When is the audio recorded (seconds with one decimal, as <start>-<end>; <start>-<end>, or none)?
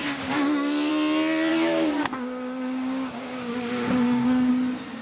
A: 0.9-1.5; 4.5-5.0